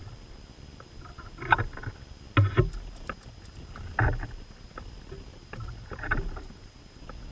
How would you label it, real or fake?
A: real